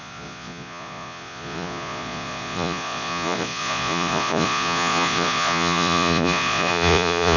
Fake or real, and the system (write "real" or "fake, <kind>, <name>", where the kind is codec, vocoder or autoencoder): fake, vocoder, Vocos